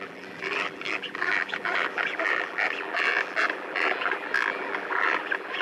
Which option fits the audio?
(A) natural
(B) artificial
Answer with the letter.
B